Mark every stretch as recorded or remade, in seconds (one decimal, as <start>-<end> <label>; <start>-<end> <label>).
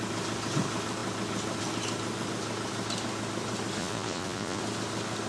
0.0-3.8 recorded; 3.8-4.6 remade; 4.6-5.3 recorded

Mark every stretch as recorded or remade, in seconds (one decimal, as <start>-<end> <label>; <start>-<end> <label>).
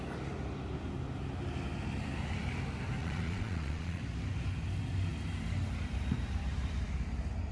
0.0-3.0 recorded; 3.0-4.0 remade; 4.0-7.5 recorded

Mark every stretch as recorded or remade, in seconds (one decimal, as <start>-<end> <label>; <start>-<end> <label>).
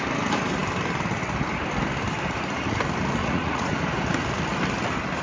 0.0-3.2 recorded; 3.2-3.7 remade; 3.7-5.2 recorded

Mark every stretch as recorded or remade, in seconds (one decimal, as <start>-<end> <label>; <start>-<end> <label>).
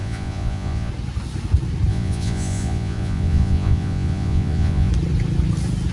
0.0-0.9 remade; 0.9-1.9 recorded; 1.9-4.9 remade; 4.9-5.9 recorded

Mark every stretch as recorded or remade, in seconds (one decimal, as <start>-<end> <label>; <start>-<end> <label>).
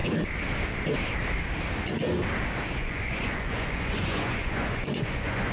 0.0-2.7 recorded; 2.7-5.5 remade